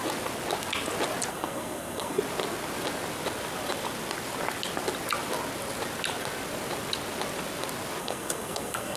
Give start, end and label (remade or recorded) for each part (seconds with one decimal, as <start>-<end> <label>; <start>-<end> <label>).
0.0-1.3 recorded; 1.3-2.2 remade; 2.2-8.0 recorded; 8.0-9.0 remade